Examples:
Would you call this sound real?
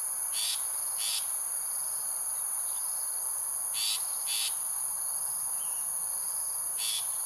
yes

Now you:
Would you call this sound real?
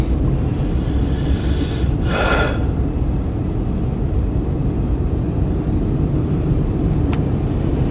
yes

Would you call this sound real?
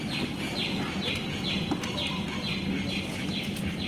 yes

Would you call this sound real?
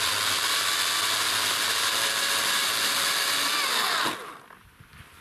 yes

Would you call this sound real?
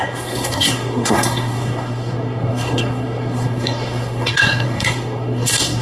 no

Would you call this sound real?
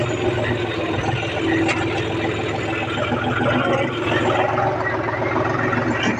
yes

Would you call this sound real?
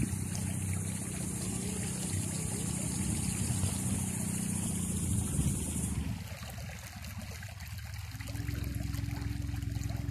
yes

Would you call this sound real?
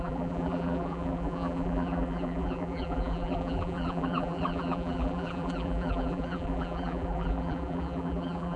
no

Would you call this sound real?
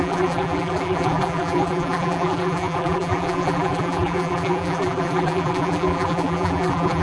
no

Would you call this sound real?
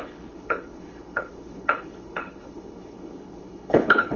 no